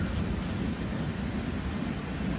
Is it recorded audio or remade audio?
recorded